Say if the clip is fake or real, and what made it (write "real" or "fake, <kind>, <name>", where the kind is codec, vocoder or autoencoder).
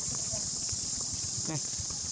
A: fake, vocoder, Vocos